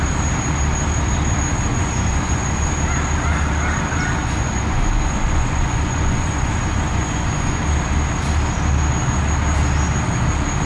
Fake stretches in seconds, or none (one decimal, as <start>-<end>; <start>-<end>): 1.7-2.7; 4.2-7.6